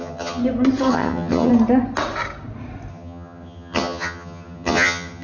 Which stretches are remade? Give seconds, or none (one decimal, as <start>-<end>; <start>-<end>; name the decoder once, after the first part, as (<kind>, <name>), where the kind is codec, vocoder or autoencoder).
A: 0.0-0.4 (vocoder, HiFi-GAN); 0.9-1.5; 2.9-5.2